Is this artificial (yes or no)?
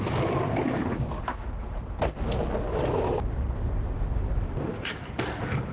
no